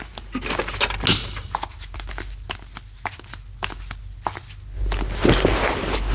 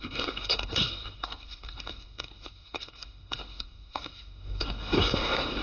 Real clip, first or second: first